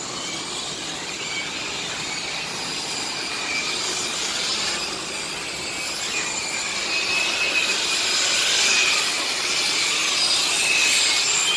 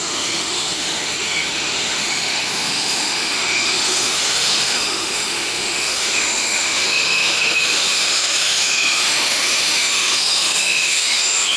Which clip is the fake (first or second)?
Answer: second